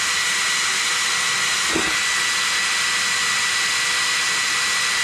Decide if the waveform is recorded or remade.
recorded